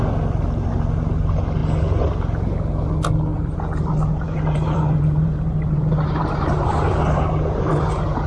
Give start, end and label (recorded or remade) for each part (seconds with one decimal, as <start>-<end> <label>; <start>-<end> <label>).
0.0-3.3 recorded; 3.3-8.3 remade